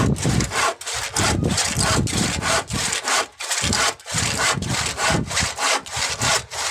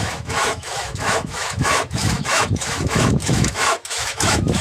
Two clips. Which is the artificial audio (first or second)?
second